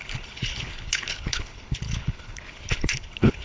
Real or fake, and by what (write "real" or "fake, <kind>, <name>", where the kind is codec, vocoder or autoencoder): fake, codec, HILCodec